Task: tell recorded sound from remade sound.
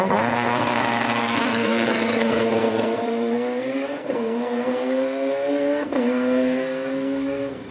remade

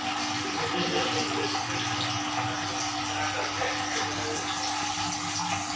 recorded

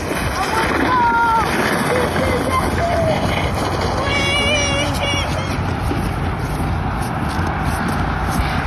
recorded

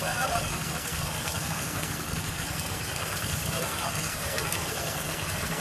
remade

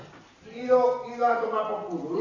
recorded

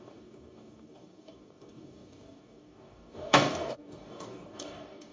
remade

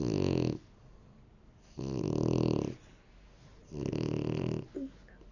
recorded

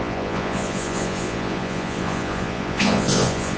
remade